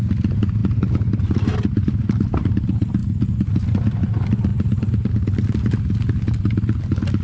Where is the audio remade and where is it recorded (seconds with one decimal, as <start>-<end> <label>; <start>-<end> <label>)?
0.0-7.2 recorded